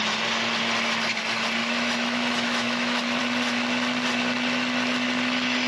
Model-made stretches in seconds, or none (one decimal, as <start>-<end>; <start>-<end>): 1.6-3.2